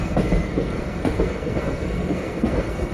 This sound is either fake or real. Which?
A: fake